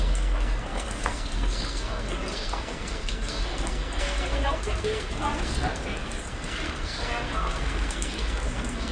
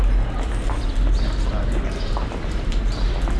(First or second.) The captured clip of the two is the second